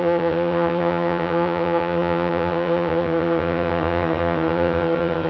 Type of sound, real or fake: fake